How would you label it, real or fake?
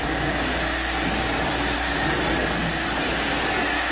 real